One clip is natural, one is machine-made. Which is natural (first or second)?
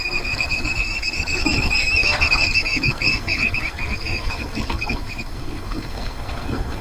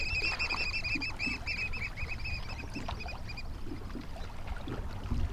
second